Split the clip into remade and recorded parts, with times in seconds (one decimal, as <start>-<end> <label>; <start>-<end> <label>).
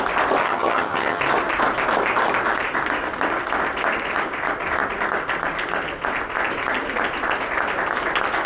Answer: 0.0-0.4 recorded; 0.4-1.2 remade; 1.2-8.5 recorded